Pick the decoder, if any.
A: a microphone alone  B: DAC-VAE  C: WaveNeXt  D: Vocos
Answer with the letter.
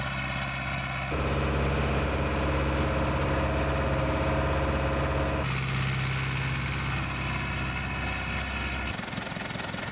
A